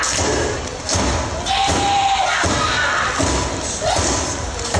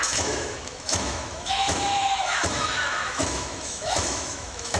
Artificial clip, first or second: second